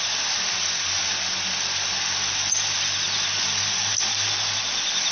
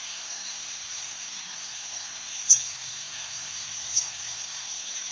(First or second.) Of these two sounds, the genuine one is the first